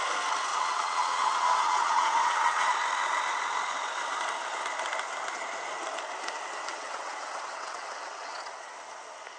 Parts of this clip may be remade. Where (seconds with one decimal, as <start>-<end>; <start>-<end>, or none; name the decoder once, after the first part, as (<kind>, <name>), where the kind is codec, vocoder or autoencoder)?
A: 0.5-2.7 (vocoder, WaveNeXt); 6.7-8.7